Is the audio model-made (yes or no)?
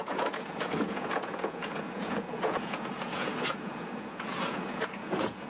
yes